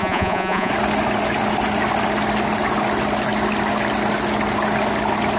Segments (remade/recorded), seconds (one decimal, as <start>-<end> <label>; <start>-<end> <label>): 0.0-0.7 remade; 0.7-5.4 recorded